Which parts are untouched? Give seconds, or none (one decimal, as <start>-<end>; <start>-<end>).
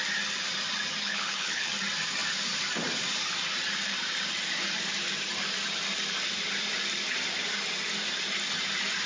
0.0-1.0; 1.7-9.1